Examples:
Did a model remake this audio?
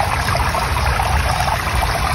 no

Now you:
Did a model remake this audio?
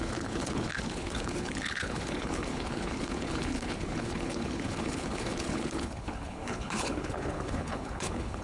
yes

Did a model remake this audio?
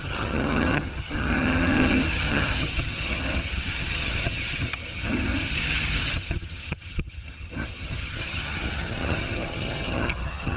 yes